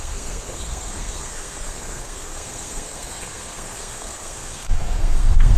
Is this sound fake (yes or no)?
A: yes